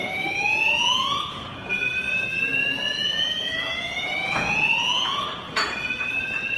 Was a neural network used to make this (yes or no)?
yes